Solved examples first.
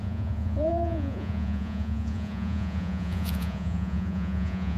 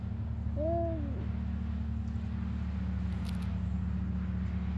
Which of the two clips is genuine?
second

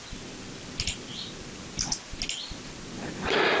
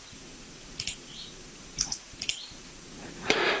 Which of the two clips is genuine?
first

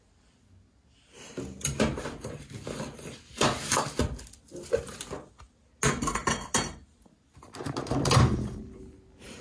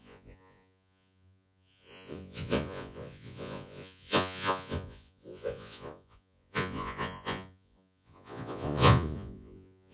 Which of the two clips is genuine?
first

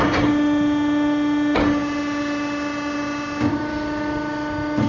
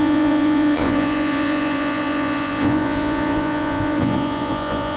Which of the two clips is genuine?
first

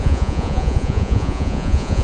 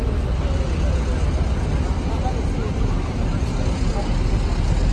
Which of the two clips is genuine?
second